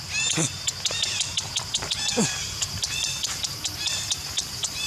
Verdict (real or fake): real